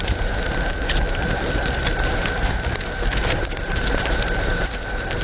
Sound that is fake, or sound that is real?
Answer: real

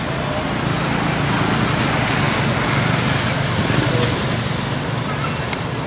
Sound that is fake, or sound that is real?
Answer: real